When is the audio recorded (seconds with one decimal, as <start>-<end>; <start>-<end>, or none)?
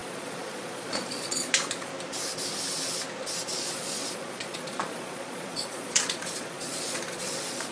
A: 1.9-3.5